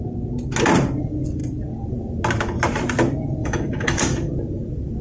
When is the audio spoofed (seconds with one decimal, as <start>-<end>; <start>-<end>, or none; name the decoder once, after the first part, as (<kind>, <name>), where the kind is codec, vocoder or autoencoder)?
3.4-4.0 (autoencoder, DAC-VAE)